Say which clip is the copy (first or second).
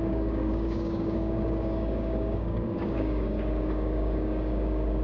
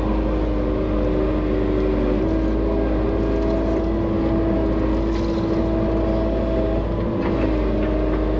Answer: first